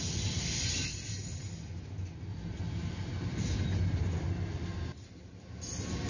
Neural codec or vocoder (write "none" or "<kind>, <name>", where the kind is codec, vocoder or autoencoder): none